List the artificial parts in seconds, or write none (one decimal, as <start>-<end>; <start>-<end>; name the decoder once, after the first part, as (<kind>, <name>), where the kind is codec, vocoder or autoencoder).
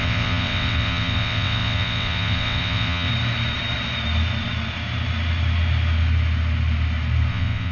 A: 0.0-3.1 (vocoder, WaveNeXt); 7.3-7.7